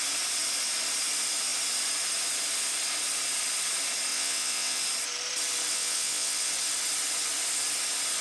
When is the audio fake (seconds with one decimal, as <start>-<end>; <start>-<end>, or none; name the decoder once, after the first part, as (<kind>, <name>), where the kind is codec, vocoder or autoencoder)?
4.1-4.8 (vocoder, WaveNeXt); 5.7-6.5